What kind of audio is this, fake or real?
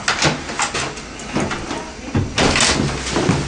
real